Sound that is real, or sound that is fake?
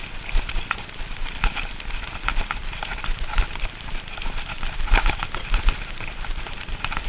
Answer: real